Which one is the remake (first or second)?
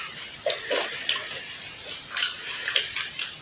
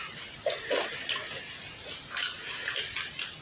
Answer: first